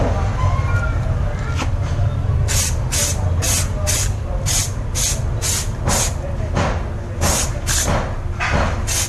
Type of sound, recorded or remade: recorded